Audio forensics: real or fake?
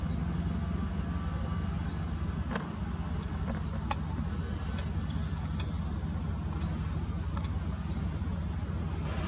real